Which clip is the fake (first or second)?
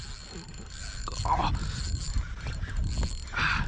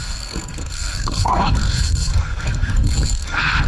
second